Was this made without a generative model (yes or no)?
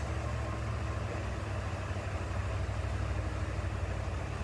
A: yes